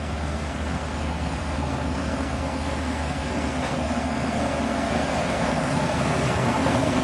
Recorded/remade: remade